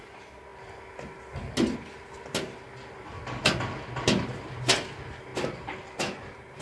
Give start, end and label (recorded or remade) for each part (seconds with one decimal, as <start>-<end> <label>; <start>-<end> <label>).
0.0-6.6 recorded